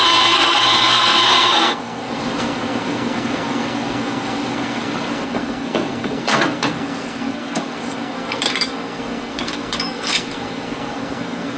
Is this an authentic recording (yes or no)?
no